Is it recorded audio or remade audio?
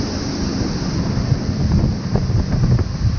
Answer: recorded